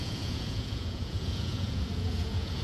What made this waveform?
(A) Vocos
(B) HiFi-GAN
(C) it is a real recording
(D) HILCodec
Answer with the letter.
A